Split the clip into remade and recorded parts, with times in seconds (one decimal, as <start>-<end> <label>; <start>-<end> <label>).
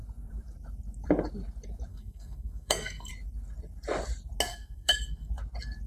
0.0-1.9 recorded; 1.9-3.1 remade; 3.1-4.5 recorded; 4.5-5.3 remade; 5.3-5.9 recorded